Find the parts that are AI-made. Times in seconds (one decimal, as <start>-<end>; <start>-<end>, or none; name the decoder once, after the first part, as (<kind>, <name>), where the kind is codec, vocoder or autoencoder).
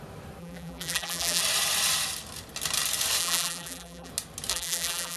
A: 0.4-1.4 (vocoder, BigVGAN v2); 3.2-4.1; 4.5-5.2